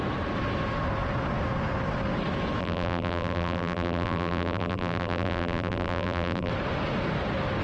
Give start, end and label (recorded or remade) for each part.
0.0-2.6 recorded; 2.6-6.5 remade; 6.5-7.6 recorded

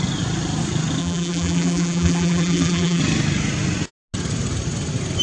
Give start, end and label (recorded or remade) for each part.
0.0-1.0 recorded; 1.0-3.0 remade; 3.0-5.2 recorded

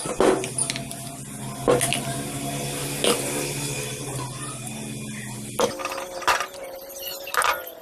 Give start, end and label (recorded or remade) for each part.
0.0-7.8 recorded